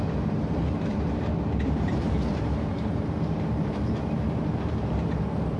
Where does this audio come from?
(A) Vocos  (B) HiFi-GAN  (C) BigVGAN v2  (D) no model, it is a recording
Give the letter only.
C